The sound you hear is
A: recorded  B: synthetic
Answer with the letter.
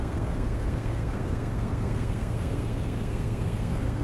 B